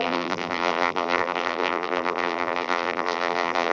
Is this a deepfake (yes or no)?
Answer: yes